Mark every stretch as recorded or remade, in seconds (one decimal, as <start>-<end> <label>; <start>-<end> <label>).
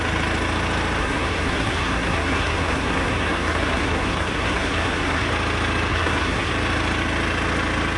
0.0-1.0 recorded; 1.0-5.3 remade; 5.3-5.9 recorded; 5.9-6.5 remade; 6.5-8.0 recorded